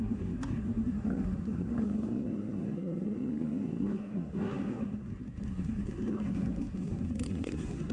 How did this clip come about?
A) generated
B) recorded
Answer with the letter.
A